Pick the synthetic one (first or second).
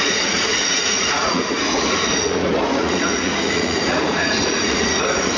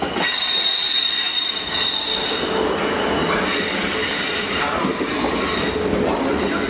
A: first